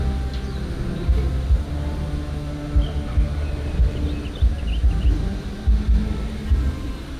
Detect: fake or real real